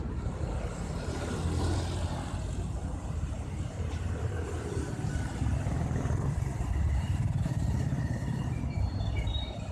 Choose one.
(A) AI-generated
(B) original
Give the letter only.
A